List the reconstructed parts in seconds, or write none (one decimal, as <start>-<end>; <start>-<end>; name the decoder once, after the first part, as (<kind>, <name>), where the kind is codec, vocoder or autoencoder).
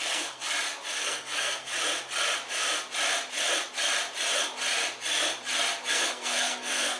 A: 0.0-0.5 (codec, SNAC); 1.0-1.7; 5.9-7.0